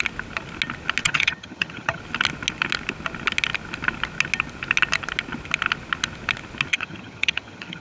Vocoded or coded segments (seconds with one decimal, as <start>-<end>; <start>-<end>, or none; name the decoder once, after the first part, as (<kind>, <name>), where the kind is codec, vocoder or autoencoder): 1.0-2.0 (vocoder, HiFi-GAN); 6.7-7.8